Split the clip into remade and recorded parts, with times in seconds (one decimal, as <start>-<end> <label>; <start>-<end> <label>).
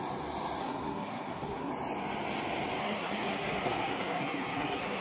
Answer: 0.0-0.6 recorded; 0.6-1.7 remade; 1.7-2.8 recorded; 2.8-5.0 remade